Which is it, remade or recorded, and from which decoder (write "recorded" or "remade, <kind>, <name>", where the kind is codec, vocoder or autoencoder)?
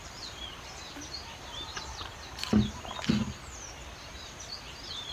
recorded